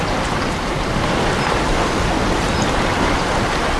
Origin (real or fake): real